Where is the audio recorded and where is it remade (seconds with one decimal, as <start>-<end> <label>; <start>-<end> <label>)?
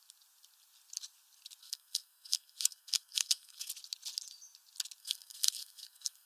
0.0-1.6 recorded; 1.6-3.7 remade; 3.7-5.0 recorded; 5.0-6.3 remade